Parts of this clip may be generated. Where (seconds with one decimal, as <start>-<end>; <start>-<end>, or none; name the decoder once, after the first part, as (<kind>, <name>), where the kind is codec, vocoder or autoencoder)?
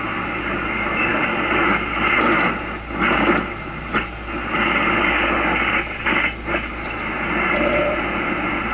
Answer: none